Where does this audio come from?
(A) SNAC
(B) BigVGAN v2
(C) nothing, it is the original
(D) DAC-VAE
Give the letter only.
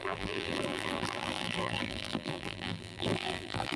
B